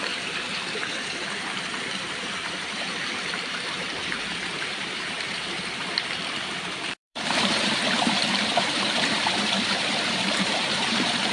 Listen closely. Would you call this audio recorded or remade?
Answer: remade